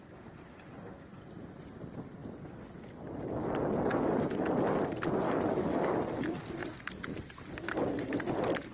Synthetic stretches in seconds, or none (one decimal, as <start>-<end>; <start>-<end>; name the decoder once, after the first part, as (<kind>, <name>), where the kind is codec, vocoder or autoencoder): none